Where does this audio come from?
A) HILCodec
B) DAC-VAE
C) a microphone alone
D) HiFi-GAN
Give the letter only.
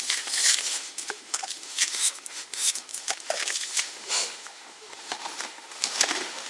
B